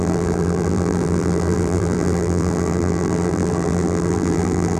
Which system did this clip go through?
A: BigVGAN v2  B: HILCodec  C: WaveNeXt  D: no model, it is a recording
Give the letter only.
A